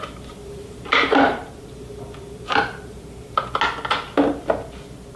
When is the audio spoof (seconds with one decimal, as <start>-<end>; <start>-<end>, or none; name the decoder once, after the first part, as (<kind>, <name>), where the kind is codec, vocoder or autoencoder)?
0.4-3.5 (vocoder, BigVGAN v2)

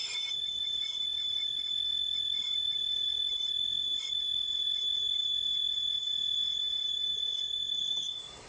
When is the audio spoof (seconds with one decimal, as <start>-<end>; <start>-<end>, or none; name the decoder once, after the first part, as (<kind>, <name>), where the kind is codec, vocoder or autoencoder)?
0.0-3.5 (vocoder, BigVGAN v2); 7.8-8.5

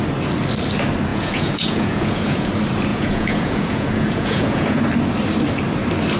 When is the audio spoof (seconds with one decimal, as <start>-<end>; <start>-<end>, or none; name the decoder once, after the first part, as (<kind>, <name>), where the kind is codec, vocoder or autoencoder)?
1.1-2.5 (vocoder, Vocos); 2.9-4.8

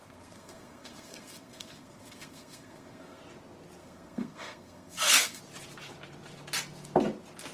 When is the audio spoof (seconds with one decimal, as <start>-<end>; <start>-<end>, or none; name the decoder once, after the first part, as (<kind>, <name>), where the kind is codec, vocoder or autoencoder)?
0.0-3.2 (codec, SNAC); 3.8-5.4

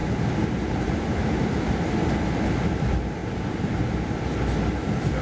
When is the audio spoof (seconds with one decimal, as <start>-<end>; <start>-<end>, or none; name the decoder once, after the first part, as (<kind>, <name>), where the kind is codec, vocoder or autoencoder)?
0.0-1.7 (vocoder, BigVGAN v2); 3.2-3.9

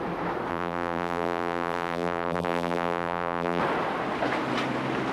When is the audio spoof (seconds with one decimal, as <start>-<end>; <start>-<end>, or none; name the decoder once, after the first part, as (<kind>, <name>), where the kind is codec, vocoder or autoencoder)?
0.5-3.6 (vocoder, BigVGAN v2)

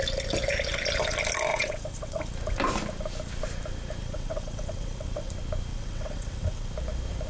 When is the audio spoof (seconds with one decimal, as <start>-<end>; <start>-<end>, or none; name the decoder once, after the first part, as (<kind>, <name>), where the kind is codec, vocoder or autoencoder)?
1.5-2.2 (vocoder, WaveNeXt); 4.0-5.3; 5.7-6.7